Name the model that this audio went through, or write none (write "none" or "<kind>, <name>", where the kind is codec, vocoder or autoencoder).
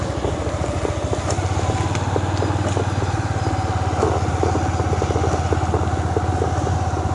none